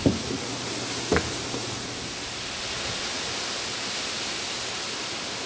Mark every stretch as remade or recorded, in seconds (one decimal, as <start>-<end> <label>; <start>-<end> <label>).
0.0-5.5 recorded